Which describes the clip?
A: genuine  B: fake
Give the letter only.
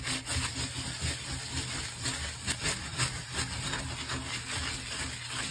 A